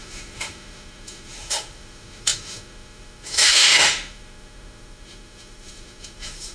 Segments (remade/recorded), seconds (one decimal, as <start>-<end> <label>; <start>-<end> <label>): 0.0-6.5 remade

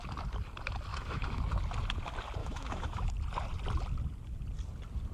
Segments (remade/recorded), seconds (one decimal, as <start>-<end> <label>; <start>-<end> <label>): 0.0-0.9 recorded; 0.9-1.4 remade; 1.4-2.4 recorded; 2.4-3.1 remade; 3.1-5.1 recorded

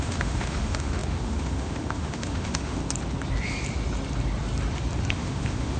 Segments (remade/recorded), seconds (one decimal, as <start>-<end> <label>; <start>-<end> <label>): 0.0-2.8 remade; 2.8-5.1 recorded; 5.1-5.8 remade

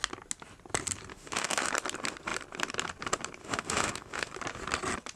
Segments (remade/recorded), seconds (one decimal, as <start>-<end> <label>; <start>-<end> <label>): 0.0-1.1 recorded; 1.1-1.7 remade; 1.7-3.4 recorded; 3.4-4.3 remade; 4.3-5.2 recorded

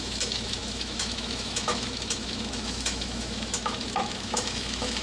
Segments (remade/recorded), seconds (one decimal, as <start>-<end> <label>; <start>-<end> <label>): 0.0-5.0 remade

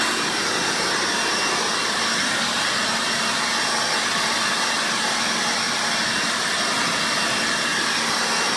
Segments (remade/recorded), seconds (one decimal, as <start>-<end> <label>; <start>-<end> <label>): 0.0-8.6 recorded

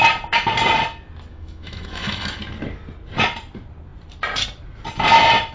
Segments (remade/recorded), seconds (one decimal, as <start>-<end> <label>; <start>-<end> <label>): 0.0-1.3 recorded; 1.3-2.4 remade; 2.4-5.5 recorded